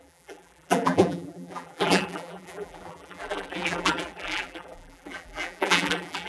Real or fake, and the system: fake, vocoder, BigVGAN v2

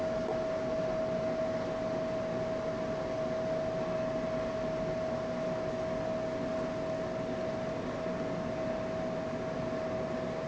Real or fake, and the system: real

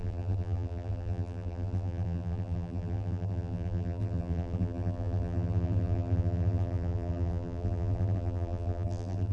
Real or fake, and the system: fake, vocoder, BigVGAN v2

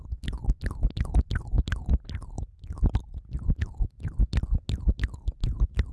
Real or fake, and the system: real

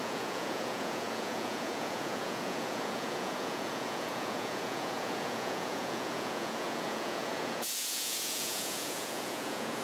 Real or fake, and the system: fake, vocoder, Vocos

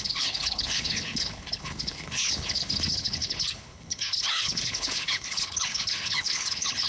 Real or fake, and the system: fake, codec, HILCodec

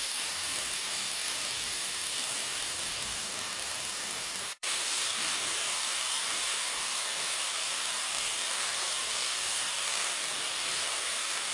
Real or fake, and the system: fake, codec, DAC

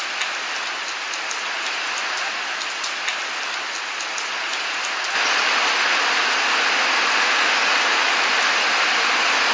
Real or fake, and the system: real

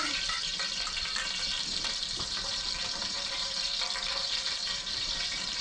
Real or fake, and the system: fake, vocoder, BigVGAN v2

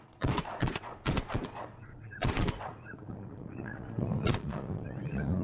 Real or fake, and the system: fake, vocoder, Vocos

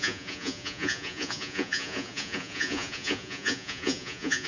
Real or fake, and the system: fake, vocoder, Vocos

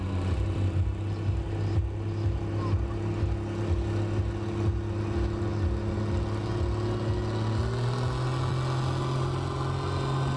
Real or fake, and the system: real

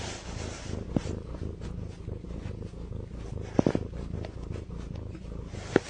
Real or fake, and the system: real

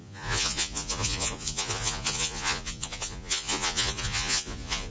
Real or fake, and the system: fake, vocoder, Vocos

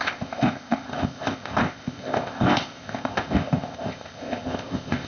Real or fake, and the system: fake, codec, ZipCodec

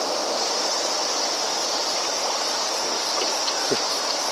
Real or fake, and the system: real